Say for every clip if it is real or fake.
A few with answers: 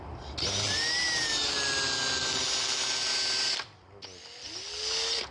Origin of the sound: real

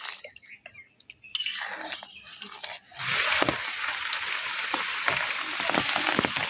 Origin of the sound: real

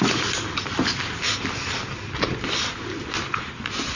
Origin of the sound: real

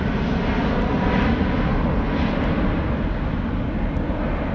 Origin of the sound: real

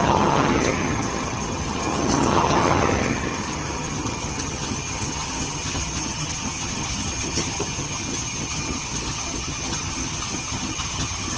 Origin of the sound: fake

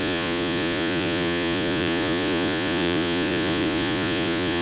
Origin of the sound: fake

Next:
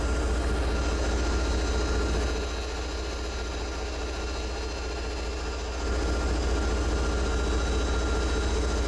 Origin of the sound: real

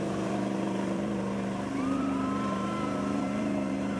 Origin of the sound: fake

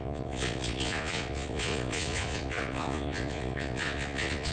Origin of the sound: fake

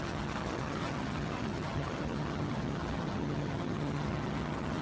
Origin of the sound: fake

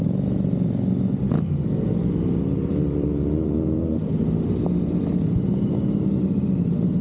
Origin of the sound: real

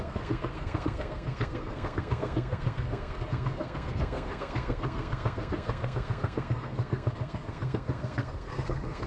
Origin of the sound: fake